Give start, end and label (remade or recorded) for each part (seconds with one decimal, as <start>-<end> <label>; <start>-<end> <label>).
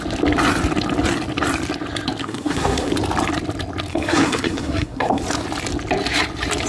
0.0-2.2 recorded; 2.2-2.9 remade; 2.9-3.9 recorded; 3.9-5.2 remade; 5.2-6.7 recorded